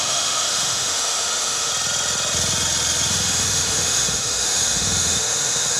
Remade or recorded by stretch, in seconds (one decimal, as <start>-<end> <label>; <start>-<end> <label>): 0.0-1.7 remade; 1.7-3.1 recorded; 3.1-5.8 remade